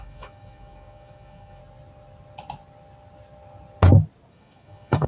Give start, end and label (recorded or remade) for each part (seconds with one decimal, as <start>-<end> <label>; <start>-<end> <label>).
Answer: 0.0-1.6 remade; 1.6-4.3 recorded; 4.3-5.1 remade